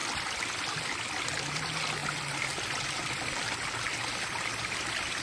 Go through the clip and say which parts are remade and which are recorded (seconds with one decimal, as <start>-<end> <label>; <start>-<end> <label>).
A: 0.0-5.2 recorded